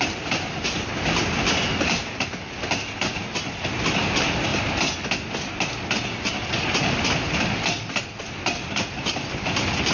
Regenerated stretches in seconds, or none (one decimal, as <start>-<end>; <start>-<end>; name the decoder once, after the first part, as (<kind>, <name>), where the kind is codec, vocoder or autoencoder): none